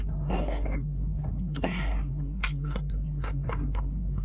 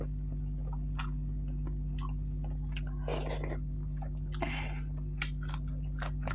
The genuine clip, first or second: second